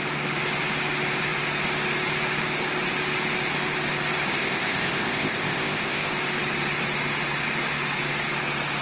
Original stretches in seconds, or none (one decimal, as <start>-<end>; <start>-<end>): 0.0-4.3; 6.1-8.8